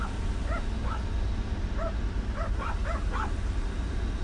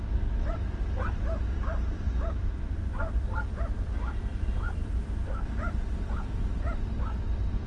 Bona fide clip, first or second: first